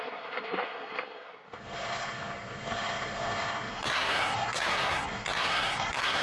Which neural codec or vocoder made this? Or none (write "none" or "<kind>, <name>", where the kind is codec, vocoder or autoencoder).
codec, SNAC